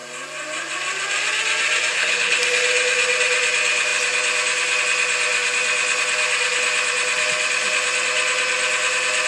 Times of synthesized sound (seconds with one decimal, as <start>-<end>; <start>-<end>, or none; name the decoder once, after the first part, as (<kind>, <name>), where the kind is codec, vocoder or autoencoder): 1.9-2.4 (codec, HILCodec)